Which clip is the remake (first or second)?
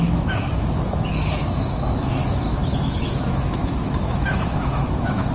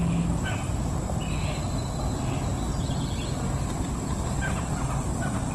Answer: first